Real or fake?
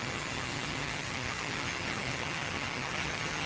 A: fake